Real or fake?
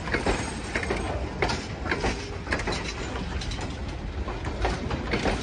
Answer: real